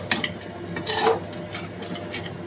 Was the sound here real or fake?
real